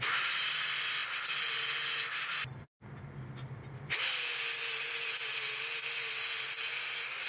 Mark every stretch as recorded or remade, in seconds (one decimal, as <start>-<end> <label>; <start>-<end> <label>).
0.0-7.3 recorded